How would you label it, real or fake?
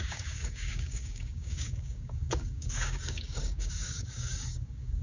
fake